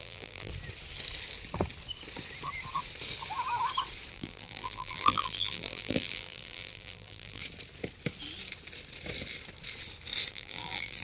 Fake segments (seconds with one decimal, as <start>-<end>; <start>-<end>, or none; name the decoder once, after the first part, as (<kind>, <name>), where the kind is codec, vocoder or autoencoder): 0.0-0.5 (vocoder, BigVGAN v2); 4.1-7.4; 10.3-11.0